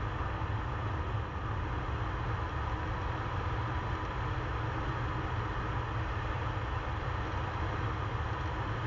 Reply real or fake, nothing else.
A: real